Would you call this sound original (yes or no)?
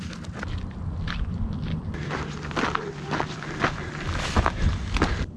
yes